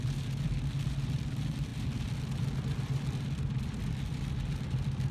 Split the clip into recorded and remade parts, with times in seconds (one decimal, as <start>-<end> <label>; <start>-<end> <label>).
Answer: 0.0-5.1 remade